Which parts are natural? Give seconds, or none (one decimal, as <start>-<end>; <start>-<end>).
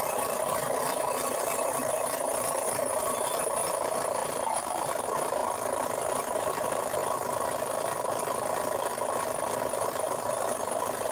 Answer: 5.4-5.9; 7.0-9.6